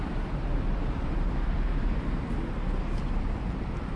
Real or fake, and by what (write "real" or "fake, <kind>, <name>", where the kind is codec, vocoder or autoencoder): fake, vocoder, BigVGAN v2